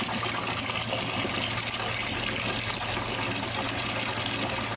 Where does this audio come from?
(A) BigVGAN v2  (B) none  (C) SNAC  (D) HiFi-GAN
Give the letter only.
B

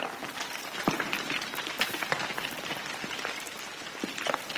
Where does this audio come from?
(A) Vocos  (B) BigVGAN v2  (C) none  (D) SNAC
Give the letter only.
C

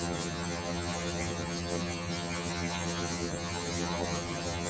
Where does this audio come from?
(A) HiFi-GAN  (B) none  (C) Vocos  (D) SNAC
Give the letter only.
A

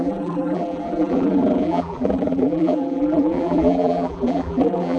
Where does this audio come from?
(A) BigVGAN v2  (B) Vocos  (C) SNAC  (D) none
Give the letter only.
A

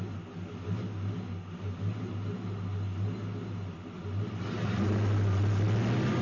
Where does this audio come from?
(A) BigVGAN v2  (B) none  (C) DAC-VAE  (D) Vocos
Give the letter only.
B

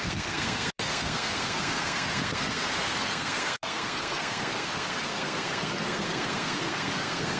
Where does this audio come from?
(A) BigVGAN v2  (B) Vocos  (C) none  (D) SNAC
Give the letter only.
D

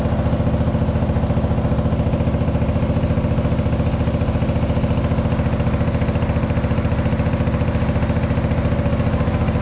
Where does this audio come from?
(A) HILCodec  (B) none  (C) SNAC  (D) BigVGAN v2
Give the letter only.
B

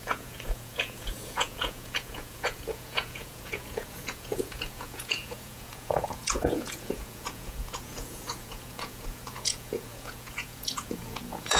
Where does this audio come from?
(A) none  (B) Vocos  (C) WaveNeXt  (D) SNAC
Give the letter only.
B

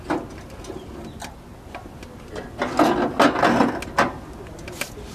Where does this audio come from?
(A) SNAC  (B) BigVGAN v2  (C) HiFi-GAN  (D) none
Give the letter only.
D